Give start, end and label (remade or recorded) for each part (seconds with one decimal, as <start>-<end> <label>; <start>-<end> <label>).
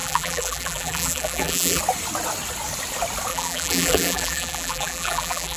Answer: 0.0-1.8 remade; 1.8-3.3 recorded; 3.3-5.6 remade